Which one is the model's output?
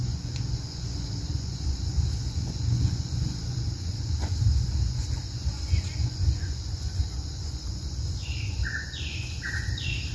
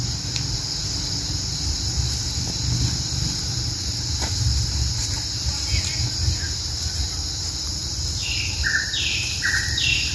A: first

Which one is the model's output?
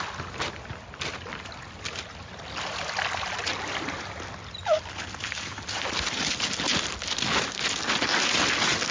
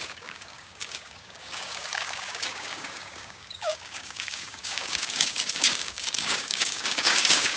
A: second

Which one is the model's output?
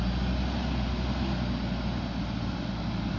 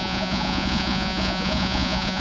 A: second